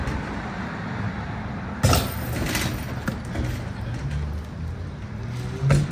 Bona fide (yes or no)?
yes